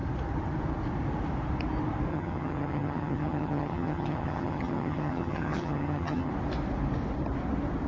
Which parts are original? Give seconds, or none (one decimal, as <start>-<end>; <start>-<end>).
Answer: 0.0-2.1; 6.3-7.9